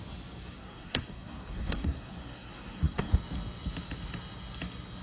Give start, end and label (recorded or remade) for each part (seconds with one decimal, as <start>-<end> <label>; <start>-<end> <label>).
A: 0.0-0.6 recorded; 0.6-3.1 remade; 3.1-5.0 recorded